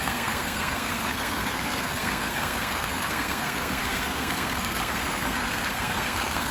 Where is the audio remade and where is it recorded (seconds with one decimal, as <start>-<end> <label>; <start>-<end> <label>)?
0.0-6.5 remade